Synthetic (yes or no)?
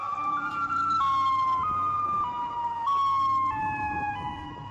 no